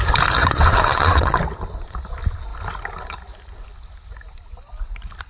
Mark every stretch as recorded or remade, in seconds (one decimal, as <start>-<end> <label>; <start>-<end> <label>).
0.0-0.4 recorded; 0.4-1.4 remade; 1.4-5.3 recorded